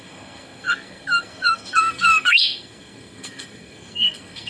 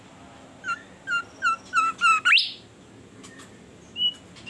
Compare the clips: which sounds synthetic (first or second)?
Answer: first